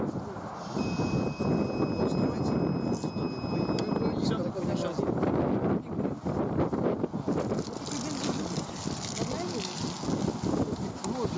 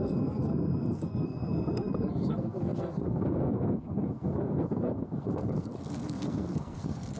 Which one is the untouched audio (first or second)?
first